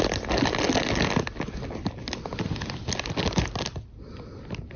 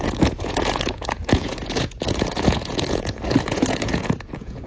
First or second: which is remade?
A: second